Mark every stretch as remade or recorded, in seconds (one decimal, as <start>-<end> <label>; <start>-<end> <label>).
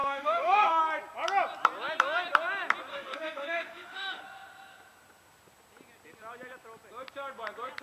0.0-0.8 remade; 0.8-2.9 recorded; 2.9-4.2 remade; 4.2-7.8 recorded